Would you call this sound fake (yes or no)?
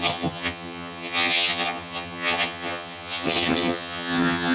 yes